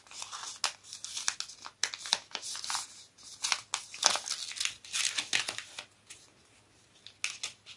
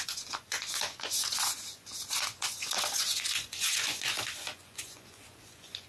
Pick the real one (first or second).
first